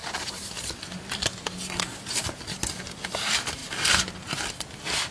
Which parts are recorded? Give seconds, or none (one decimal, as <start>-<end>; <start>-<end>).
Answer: 0.0-5.1

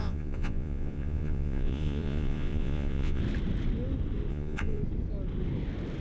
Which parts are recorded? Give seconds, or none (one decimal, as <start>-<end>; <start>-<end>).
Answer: 3.2-4.3; 4.8-6.0

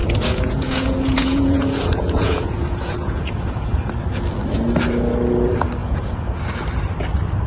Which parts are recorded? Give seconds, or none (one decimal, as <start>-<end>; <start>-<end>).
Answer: 3.9-5.8; 6.4-7.5

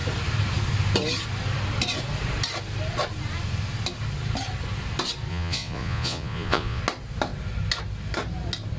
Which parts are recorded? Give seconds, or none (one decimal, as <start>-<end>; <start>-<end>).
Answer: 0.0-5.3; 6.8-8.8